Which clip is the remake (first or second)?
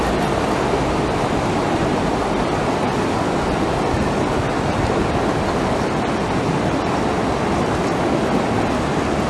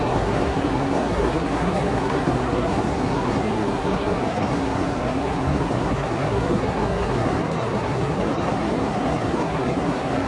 second